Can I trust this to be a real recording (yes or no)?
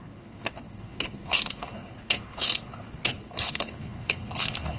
no